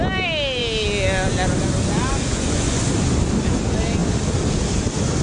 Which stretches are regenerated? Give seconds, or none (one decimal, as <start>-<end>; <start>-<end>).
2.1-2.8